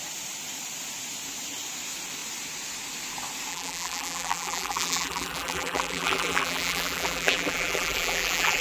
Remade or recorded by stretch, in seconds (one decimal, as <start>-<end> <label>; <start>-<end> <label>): 0.0-3.5 recorded; 3.5-8.6 remade